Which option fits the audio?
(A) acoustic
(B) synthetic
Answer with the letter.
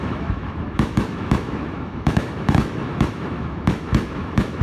B